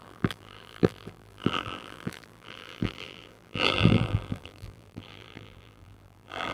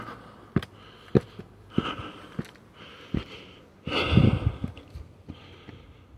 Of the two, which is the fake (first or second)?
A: first